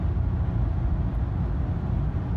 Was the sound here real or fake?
real